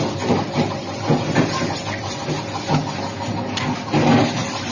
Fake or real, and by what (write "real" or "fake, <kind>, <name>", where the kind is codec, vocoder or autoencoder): real